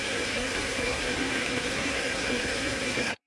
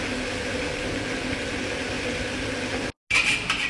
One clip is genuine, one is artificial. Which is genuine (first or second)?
second